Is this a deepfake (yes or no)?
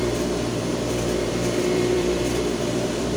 yes